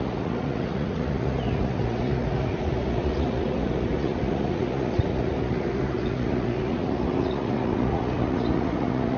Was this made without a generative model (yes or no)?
no